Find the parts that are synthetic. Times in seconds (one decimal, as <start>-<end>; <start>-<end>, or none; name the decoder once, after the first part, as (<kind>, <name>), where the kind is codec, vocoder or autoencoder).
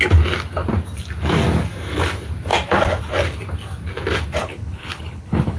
4.4-5.6 (codec, HILCodec)